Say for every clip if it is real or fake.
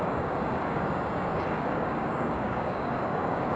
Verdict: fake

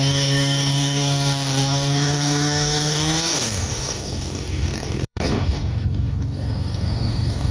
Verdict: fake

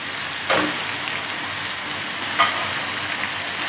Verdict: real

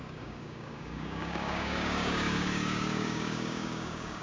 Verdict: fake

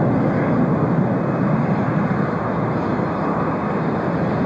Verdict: real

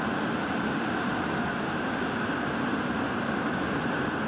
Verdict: real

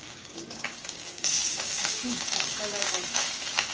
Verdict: fake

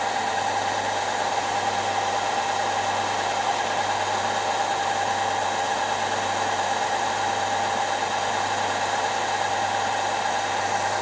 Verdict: real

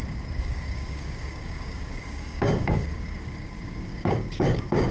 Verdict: fake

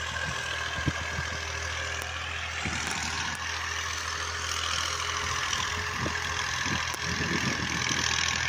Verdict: real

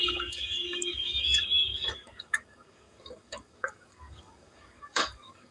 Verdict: fake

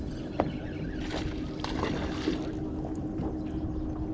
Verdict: real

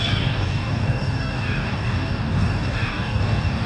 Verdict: fake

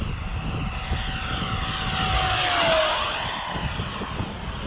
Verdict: real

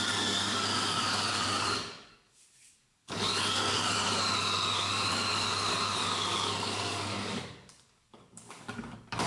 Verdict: fake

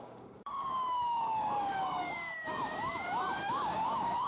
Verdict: fake